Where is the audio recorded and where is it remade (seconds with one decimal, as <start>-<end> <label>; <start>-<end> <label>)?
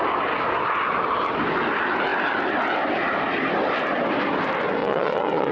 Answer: 0.0-4.8 recorded; 4.8-5.5 remade